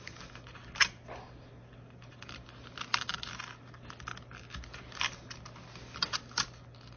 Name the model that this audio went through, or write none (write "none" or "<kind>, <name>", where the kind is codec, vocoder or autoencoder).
none